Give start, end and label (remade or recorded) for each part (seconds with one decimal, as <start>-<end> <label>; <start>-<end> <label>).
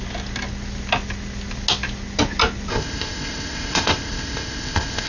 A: 0.0-2.7 recorded; 2.7-5.1 remade